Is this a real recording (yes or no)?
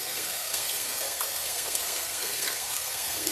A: no